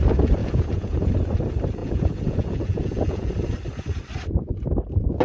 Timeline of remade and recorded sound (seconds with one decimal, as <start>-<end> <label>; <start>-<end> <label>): 0.0-0.4 recorded; 0.4-1.1 remade; 1.1-1.8 recorded; 1.8-3.3 remade; 3.3-5.2 recorded